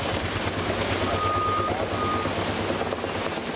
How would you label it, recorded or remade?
recorded